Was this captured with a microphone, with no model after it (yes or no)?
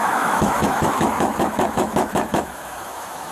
no